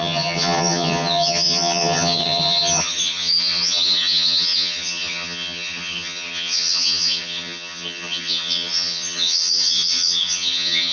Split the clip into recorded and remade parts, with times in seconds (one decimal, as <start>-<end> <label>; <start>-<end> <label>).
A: 0.0-10.9 remade